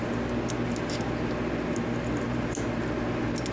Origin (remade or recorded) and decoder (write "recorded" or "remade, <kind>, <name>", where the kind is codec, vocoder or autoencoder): recorded